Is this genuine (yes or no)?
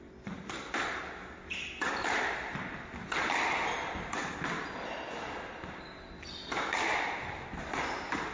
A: yes